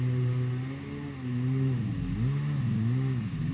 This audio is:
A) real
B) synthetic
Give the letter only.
A